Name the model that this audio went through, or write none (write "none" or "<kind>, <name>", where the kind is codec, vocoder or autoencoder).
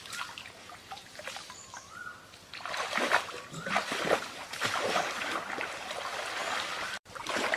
vocoder, BigVGAN v2